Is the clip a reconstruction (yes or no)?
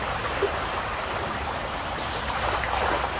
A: no